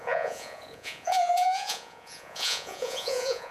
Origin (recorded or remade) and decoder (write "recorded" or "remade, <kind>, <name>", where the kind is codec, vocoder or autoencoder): remade, vocoder, Vocos